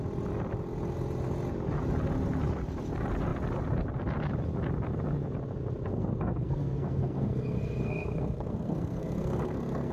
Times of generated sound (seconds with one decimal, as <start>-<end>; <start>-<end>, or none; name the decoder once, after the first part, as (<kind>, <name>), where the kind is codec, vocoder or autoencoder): 5.9-9.9 (codec, SNAC)